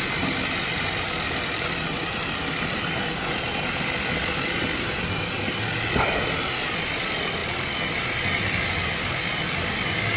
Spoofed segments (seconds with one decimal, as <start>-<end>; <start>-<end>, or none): none